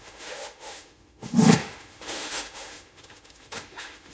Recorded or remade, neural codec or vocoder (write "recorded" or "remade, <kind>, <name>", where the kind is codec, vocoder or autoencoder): remade, autoencoder, DAC-VAE